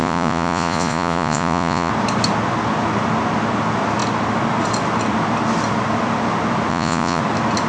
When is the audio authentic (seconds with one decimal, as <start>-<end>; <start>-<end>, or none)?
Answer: 1.9-6.7; 7.2-7.7